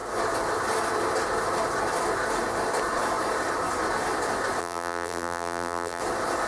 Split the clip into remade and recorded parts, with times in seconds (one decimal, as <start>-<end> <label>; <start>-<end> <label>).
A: 0.0-4.6 recorded; 4.6-6.0 remade; 6.0-6.5 recorded

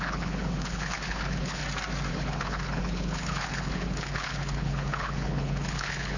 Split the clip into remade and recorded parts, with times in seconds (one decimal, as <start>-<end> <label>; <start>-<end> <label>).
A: 0.0-1.6 remade; 1.6-2.1 recorded; 2.1-6.2 remade

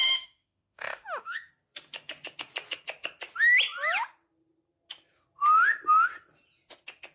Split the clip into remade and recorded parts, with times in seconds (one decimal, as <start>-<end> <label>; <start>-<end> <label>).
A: 0.0-1.5 remade; 1.5-7.1 recorded

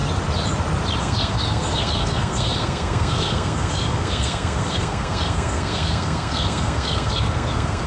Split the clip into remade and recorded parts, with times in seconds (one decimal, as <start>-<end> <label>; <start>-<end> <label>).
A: 0.0-1.0 recorded; 1.0-7.9 remade

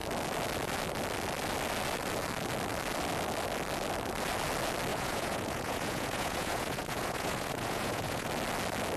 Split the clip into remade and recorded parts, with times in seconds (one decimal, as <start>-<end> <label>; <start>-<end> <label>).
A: 0.0-4.9 recorded; 4.9-8.3 remade; 8.3-9.0 recorded

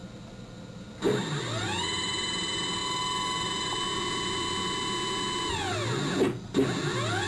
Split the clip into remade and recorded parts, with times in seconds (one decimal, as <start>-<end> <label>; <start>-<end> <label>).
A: 0.0-7.3 recorded